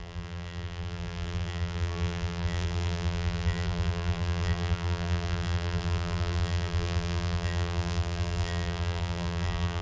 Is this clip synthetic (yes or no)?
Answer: yes